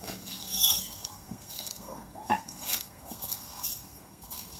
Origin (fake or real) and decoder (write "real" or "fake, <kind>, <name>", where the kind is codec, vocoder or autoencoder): fake, codec, SNAC